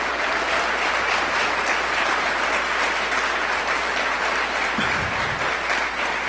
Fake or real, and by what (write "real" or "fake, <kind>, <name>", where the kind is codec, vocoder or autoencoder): real